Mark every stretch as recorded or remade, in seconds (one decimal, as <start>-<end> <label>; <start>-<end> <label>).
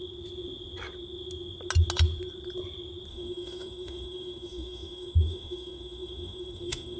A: 0.0-3.1 recorded; 3.1-7.0 remade